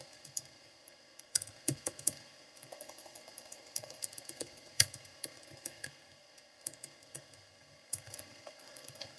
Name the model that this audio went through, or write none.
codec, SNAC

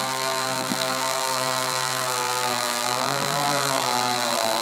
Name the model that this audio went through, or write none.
vocoder, BigVGAN v2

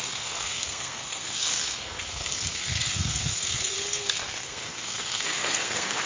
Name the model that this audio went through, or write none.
codec, SNAC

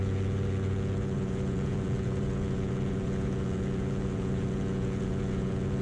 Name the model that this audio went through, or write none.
vocoder, Vocos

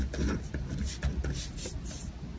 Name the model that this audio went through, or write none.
none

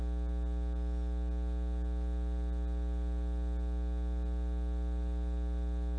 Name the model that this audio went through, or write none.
none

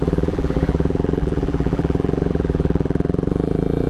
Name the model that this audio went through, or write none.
vocoder, BigVGAN v2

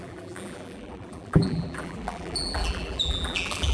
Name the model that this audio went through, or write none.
vocoder, BigVGAN v2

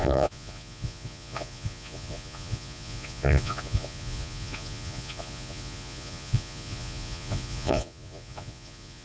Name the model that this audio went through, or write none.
vocoder, Vocos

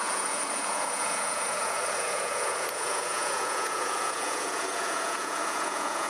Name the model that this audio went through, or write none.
vocoder, Vocos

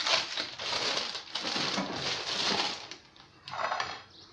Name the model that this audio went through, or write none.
none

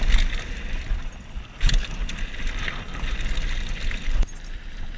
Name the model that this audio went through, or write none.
none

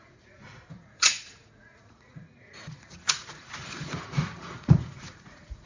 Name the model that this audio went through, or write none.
vocoder, Vocos